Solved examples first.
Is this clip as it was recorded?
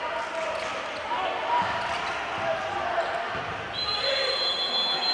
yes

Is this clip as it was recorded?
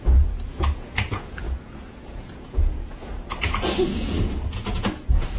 no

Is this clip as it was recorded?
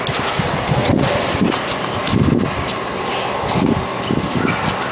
yes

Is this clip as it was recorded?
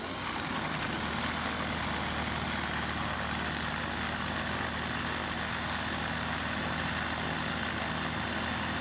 yes